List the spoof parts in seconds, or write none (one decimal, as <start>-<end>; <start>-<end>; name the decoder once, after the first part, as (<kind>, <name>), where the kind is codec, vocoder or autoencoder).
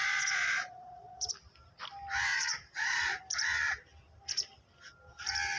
0.0-1.3 (vocoder, Vocos); 2.3-3.2